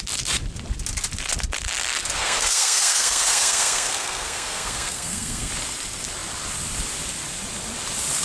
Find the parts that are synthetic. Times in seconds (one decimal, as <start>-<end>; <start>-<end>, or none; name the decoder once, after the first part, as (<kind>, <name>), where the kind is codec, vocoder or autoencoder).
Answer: 2.2-5.5 (codec, SNAC)